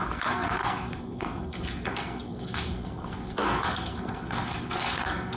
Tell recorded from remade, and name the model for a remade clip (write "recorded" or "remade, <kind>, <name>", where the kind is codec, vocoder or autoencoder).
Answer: remade, codec, SNAC